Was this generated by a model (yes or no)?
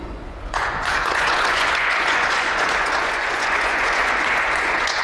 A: yes